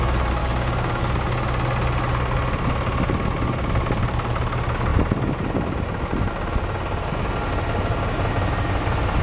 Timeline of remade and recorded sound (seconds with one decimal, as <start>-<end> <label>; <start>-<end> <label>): 0.0-0.4 recorded; 0.4-1.0 remade; 1.0-9.2 recorded